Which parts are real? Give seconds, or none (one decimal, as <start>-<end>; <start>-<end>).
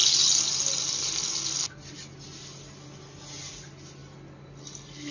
0.0-5.1